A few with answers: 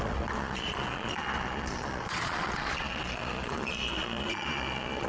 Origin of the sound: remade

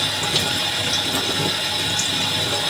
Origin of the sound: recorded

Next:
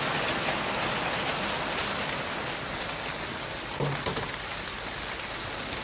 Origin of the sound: recorded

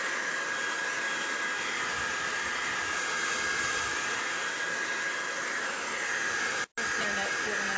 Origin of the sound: recorded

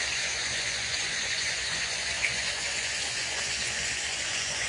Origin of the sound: remade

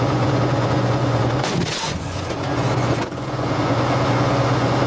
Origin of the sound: remade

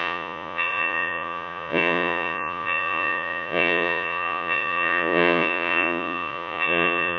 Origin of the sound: remade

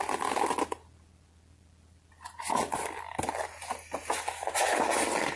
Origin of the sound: recorded